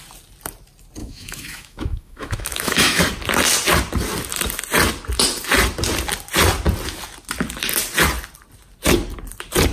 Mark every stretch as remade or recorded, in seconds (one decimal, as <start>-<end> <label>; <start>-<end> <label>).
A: 0.0-1.0 recorded; 1.0-3.0 remade; 3.0-9.7 recorded